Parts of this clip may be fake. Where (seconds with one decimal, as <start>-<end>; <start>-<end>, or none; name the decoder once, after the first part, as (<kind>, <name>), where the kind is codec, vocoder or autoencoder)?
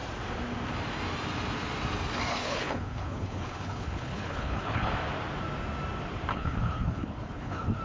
2.3-4.9 (codec, HILCodec); 6.3-7.8